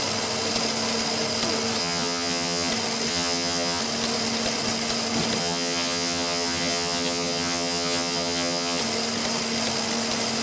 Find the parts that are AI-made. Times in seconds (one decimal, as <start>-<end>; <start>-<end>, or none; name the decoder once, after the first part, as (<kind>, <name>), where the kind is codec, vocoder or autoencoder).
1.8-2.7 (vocoder, HiFi-GAN); 3.1-3.8; 5.4-8.8